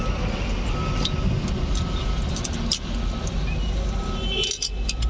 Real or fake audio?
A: real